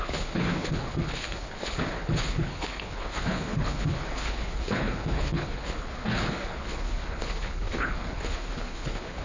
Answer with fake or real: fake